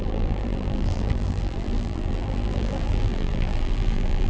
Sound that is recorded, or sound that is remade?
remade